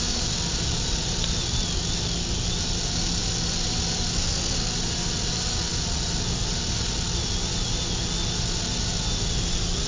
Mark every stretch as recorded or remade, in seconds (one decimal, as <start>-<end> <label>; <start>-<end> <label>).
0.0-9.9 recorded